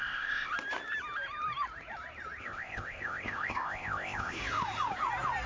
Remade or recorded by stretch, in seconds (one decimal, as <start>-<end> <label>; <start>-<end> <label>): 0.0-0.5 remade; 0.5-2.4 recorded; 2.4-4.4 remade; 4.4-5.5 recorded